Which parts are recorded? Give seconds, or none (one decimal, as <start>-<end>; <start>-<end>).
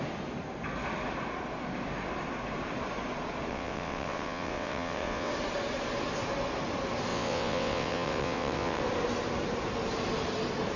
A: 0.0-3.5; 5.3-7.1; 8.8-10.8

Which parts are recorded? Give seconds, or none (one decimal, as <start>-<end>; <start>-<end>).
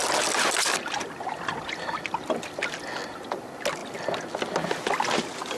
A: 0.0-5.6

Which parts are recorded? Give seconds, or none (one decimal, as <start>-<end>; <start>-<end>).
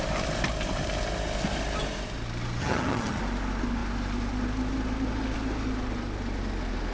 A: 0.0-2.6; 3.2-6.9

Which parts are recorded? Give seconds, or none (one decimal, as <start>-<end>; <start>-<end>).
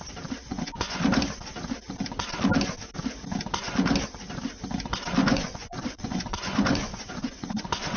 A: 0.0-0.5; 1.0-5.2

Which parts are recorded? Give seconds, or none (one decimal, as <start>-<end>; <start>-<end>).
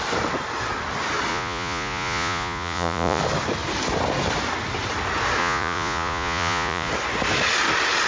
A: 0.0-1.3; 3.2-5.4; 6.9-8.1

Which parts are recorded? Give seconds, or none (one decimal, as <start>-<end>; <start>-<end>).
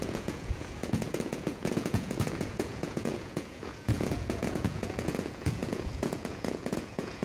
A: none